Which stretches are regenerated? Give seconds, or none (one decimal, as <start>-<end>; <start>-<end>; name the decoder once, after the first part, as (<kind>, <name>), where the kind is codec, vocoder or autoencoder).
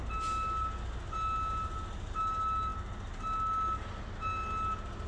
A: none